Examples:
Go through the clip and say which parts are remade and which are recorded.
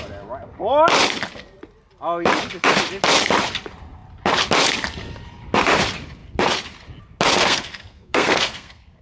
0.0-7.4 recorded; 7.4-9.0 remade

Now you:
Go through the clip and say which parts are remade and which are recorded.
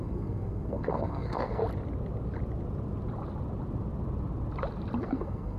0.0-1.6 remade; 1.6-5.0 recorded; 5.0-5.6 remade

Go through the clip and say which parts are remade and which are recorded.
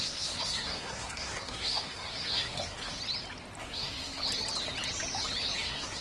0.0-3.0 remade; 3.0-3.6 recorded; 3.6-4.2 remade; 4.2-5.6 recorded; 5.6-6.0 remade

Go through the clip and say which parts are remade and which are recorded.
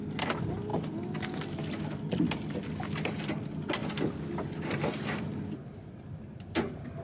0.0-7.0 recorded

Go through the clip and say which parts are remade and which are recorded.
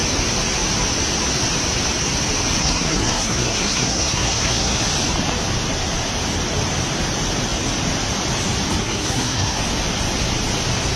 0.0-2.6 recorded; 2.6-4.8 remade; 4.8-8.8 recorded; 8.8-9.6 remade; 9.6-11.0 recorded